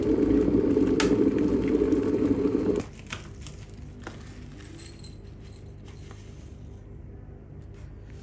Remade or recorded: recorded